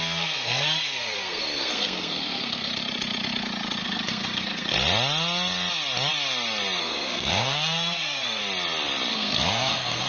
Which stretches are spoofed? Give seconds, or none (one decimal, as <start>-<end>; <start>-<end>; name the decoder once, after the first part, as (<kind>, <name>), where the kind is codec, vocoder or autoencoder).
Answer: 0.0-2.7 (codec, SNAC); 3.8-4.7; 6.8-8.4; 9.1-10.1